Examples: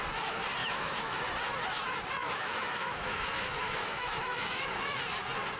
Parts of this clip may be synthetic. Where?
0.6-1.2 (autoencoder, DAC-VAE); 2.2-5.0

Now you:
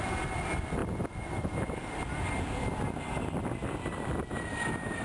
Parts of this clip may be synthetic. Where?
none

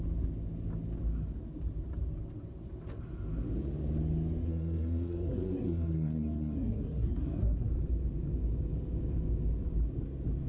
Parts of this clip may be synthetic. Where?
4.4-7.7 (codec, SNAC)

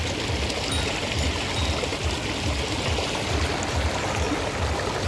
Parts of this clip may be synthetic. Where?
none

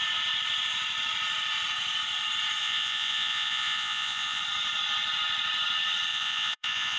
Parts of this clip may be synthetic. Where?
2.6-4.4 (vocoder, Vocos); 6.1-7.0

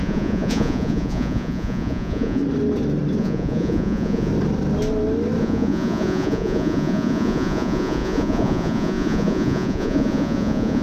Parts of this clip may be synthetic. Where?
0.0-2.4 (vocoder, Vocos); 3.2-4.3; 5.4-10.8

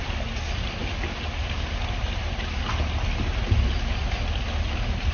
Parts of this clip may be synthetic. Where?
none